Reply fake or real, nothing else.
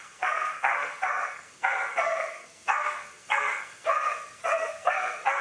fake